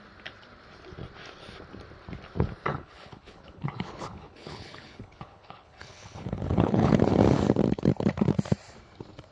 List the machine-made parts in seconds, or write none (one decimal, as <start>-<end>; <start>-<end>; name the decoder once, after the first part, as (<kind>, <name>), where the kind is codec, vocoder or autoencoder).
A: 2.7-7.0 (codec, HILCodec)

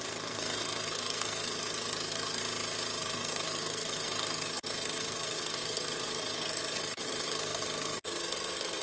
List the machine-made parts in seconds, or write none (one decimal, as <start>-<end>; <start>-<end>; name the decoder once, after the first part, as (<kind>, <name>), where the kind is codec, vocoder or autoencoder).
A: 0.0-2.4 (codec, SNAC); 3.0-8.8

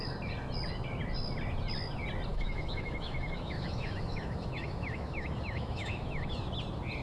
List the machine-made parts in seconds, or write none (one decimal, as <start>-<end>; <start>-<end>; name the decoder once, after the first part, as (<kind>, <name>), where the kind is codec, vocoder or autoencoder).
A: 2.3-6.5 (autoencoder, DAC-VAE)

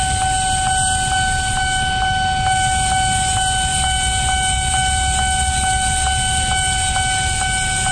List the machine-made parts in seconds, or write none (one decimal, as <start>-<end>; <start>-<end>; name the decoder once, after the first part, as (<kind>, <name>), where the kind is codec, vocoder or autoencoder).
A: none